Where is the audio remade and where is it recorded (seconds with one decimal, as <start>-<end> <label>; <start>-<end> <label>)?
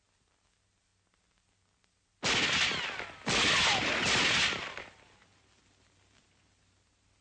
0.0-7.2 recorded